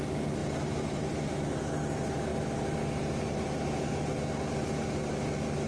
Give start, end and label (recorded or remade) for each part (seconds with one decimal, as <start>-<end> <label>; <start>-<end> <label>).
0.0-5.7 recorded